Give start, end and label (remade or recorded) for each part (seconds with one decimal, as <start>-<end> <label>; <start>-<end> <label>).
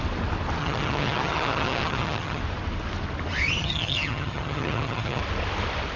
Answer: 0.0-0.6 recorded; 0.6-2.4 remade; 2.4-3.6 recorded; 3.6-5.2 remade; 5.2-6.0 recorded